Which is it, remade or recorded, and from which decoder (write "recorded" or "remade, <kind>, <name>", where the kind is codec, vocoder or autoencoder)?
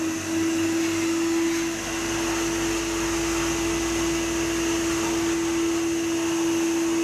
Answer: recorded